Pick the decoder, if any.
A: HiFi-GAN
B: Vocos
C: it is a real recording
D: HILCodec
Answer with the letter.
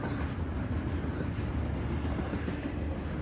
C